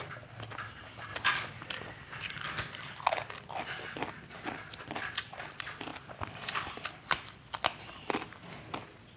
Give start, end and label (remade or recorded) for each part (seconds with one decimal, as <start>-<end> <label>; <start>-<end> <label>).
0.0-1.1 recorded; 1.1-2.6 remade; 2.6-5.9 recorded; 5.9-6.6 remade; 6.6-9.2 recorded